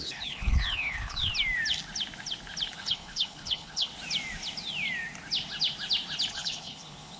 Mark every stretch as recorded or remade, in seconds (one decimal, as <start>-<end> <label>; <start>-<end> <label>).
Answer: 0.0-1.3 remade; 1.3-2.7 recorded; 2.7-3.9 remade; 3.9-6.3 recorded; 6.3-7.2 remade